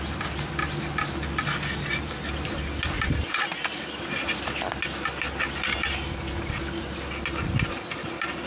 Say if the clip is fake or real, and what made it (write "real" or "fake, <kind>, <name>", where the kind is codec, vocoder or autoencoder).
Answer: real